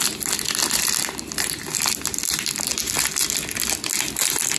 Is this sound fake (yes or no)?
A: no